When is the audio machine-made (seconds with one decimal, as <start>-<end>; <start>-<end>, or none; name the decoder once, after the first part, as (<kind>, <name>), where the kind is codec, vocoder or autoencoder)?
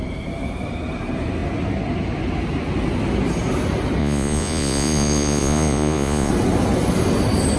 4.0-6.3 (vocoder, Vocos)